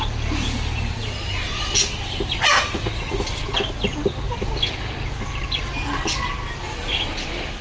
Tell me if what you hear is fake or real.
real